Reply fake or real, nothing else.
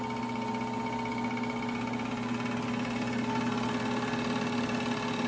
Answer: real